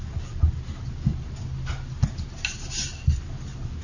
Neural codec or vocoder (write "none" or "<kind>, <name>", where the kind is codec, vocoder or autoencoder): none